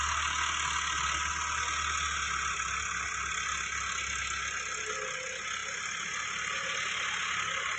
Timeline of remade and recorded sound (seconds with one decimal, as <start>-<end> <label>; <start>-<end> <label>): 0.0-7.8 recorded